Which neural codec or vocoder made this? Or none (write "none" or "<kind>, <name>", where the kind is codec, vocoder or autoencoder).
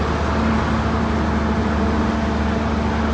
none